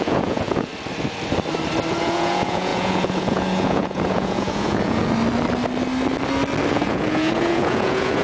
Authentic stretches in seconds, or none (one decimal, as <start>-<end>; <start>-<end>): 0.7-1.9; 5.0-6.7

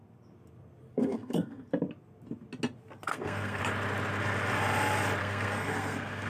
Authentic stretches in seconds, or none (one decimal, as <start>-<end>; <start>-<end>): 0.0-0.9; 1.7-3.1; 3.6-5.2

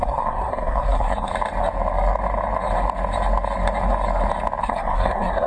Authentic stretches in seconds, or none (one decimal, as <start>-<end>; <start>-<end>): 1.3-4.6

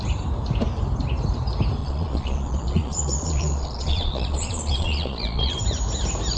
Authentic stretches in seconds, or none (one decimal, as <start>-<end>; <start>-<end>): 0.0-1.8; 5.6-6.4

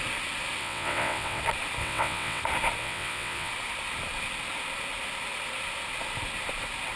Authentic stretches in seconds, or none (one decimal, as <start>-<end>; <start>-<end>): 0.0-0.6; 1.4-1.8; 2.4-2.8; 3.5-7.0

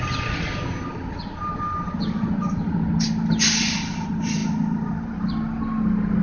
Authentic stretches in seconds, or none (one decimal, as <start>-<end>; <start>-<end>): 0.0-6.2

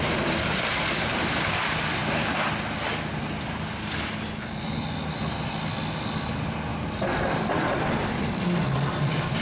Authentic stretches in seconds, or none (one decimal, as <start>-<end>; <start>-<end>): 2.0-5.5